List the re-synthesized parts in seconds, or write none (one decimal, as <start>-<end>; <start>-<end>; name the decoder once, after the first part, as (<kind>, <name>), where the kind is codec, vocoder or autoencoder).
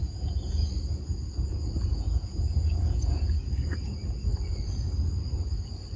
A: 0.0-0.7 (vocoder, Vocos); 1.9-3.4